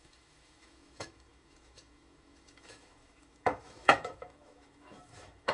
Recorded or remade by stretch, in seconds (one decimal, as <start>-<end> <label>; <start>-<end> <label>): 0.0-5.5 remade